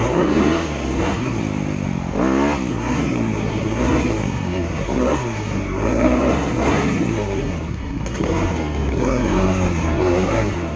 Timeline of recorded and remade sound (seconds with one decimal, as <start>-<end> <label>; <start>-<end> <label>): 0.0-1.4 remade; 1.4-2.7 recorded; 2.7-10.8 remade